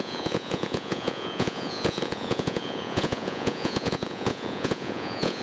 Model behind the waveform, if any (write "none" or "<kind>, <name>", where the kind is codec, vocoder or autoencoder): vocoder, Vocos